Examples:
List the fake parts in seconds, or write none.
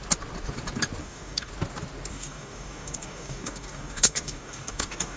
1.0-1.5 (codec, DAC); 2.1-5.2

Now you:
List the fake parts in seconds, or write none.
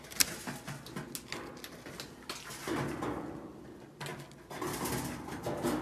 none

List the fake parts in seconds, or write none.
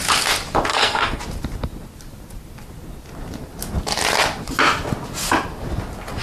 0.7-1.2 (codec, SNAC)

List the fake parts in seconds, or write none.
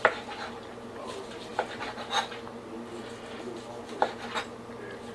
none